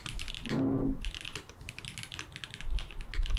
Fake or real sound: real